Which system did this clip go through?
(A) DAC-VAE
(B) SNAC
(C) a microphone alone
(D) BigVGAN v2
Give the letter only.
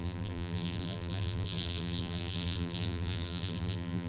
D